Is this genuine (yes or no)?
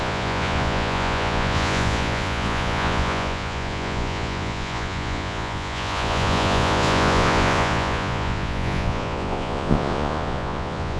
no